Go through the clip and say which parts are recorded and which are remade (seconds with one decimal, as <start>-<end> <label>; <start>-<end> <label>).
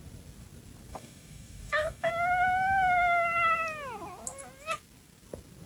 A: 0.0-0.9 recorded; 0.9-2.1 remade; 2.1-5.7 recorded